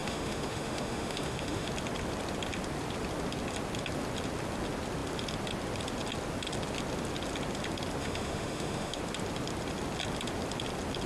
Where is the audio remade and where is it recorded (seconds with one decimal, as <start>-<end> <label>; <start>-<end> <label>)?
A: 0.0-1.7 remade; 1.7-8.0 recorded; 8.0-9.0 remade; 9.0-11.1 recorded